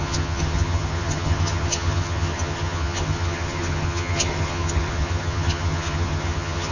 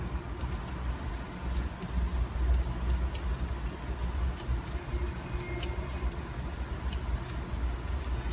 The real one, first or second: second